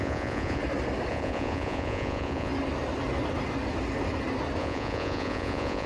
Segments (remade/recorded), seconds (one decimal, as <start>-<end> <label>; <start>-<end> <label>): 0.0-0.6 remade; 0.6-1.1 recorded; 1.1-2.5 remade; 2.5-4.6 recorded; 4.6-5.9 remade